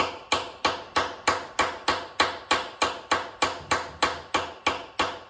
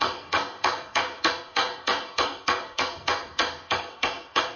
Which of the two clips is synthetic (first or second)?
second